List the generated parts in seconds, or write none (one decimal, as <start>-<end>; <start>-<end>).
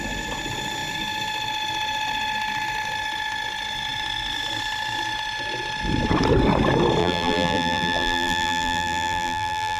7.0-9.8